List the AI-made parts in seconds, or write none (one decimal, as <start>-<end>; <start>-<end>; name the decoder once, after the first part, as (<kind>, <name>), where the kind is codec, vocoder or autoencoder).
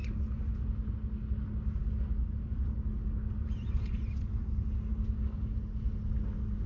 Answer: 3.4-4.1 (vocoder, BigVGAN v2)